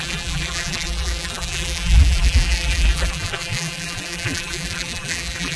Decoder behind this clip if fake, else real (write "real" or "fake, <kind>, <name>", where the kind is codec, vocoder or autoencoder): fake, vocoder, BigVGAN v2